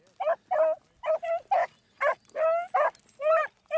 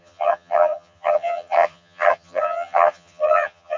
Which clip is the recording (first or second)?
first